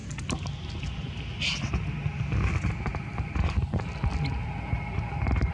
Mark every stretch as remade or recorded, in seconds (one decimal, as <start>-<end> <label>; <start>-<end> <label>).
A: 0.0-5.5 recorded